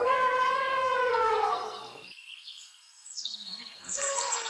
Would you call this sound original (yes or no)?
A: no